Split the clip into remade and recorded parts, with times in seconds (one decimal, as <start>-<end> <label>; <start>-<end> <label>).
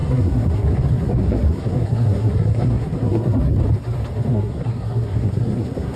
0.0-3.6 remade; 3.6-4.3 recorded; 4.3-6.0 remade